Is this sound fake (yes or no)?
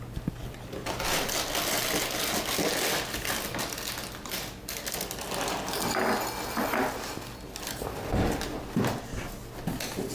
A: no